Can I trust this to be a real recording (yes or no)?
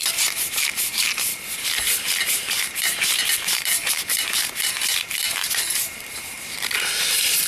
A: no